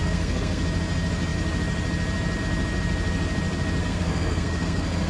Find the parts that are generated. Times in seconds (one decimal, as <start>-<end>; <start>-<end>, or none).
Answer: 0.0-0.6; 3.8-5.1